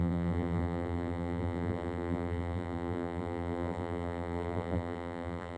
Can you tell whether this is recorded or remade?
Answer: remade